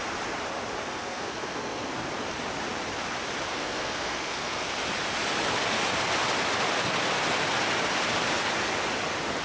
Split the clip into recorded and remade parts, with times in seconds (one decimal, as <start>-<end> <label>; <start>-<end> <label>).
0.0-0.8 recorded; 0.8-1.9 remade; 1.9-3.5 recorded; 3.5-4.6 remade; 4.6-9.4 recorded